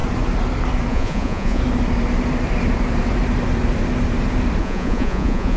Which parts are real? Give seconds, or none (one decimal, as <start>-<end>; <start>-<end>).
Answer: 0.0-0.9; 1.6-4.6